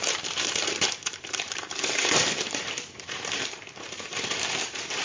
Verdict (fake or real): fake